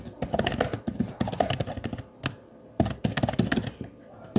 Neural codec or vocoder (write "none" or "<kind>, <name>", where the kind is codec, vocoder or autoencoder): none